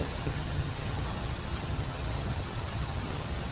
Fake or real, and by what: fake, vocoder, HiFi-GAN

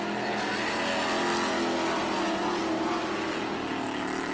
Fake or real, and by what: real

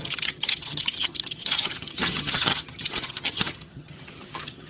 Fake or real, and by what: fake, vocoder, HiFi-GAN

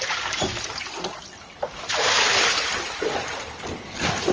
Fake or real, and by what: real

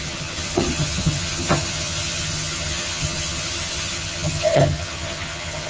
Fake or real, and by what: fake, vocoder, HiFi-GAN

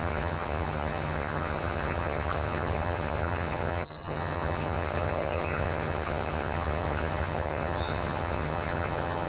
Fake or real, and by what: fake, vocoder, HiFi-GAN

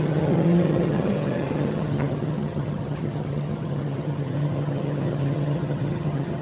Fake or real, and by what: fake, vocoder, HiFi-GAN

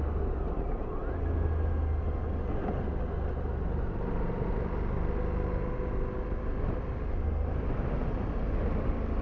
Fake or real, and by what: real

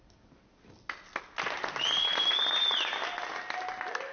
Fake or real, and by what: real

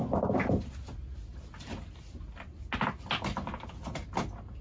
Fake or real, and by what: real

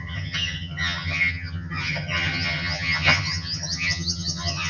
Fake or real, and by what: fake, vocoder, HiFi-GAN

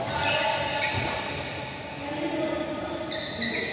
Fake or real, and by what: real